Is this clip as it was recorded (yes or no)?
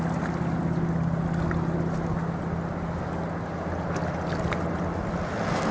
yes